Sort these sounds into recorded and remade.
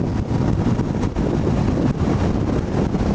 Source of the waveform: recorded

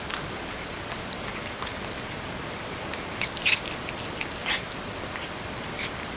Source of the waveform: recorded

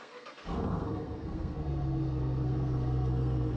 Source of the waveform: remade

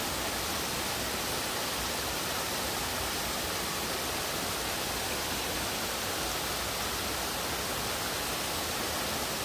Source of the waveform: recorded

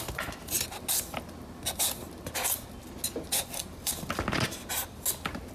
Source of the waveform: recorded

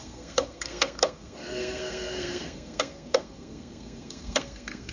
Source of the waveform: remade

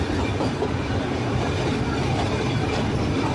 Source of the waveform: recorded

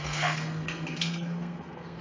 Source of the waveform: remade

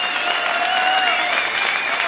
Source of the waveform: recorded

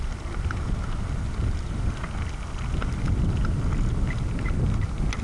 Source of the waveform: recorded